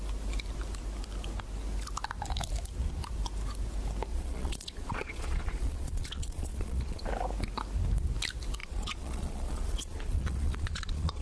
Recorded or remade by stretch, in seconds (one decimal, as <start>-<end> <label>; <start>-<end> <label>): 0.0-4.1 recorded; 4.1-7.1 remade; 7.1-8.6 recorded; 8.6-11.2 remade